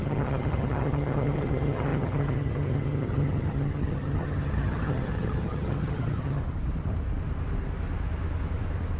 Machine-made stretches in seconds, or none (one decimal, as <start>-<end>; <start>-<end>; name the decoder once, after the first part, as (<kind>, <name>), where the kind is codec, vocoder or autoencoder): 0.0-6.4 (vocoder, HiFi-GAN)